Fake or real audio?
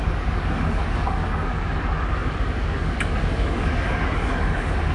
fake